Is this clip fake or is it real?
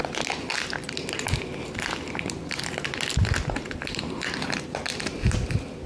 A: real